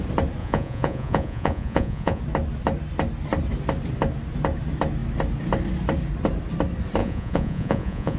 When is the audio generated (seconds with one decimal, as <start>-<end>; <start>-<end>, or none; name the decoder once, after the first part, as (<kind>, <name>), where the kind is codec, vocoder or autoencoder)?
0.4-2.2 (vocoder, Vocos); 7.0-8.2